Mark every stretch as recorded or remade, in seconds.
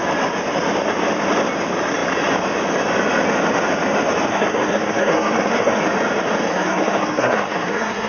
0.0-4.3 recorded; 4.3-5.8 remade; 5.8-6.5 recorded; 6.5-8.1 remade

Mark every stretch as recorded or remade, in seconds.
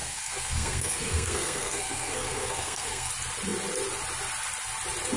0.0-3.1 remade; 3.1-5.2 recorded